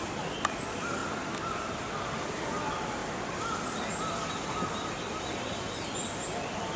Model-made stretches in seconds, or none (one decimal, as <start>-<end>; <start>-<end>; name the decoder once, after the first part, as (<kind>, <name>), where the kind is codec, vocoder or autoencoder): none